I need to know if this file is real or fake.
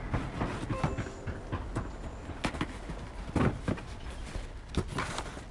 real